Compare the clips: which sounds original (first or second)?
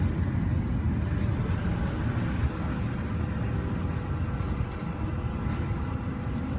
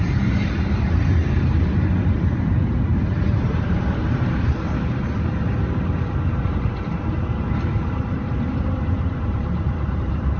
first